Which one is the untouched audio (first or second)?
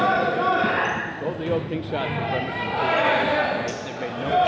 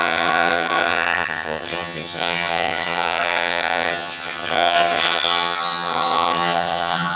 first